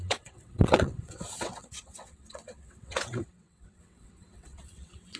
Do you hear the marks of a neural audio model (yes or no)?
yes